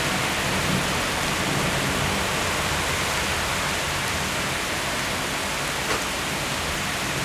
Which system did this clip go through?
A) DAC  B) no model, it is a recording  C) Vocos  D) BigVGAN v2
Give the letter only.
B